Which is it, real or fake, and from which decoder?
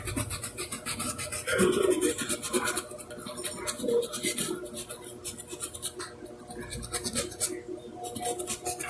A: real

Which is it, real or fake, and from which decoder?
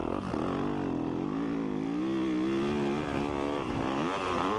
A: real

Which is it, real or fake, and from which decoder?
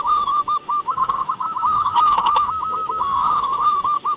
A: fake, autoencoder, DAC-VAE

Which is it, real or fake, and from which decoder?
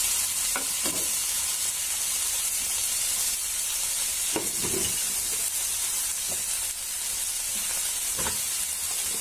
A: real